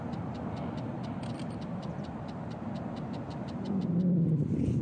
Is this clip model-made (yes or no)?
no